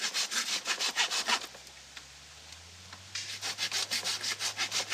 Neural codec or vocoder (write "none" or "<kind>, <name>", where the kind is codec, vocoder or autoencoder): none